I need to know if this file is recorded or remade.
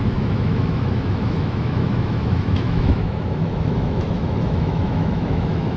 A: remade